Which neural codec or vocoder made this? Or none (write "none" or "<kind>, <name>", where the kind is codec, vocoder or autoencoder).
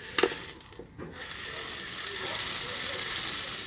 none